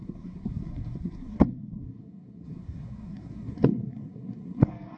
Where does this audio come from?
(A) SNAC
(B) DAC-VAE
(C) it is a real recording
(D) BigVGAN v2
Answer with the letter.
A